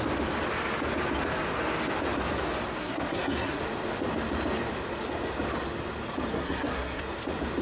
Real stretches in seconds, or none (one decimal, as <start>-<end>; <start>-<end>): 0.0-2.8; 3.6-6.3; 7.0-7.6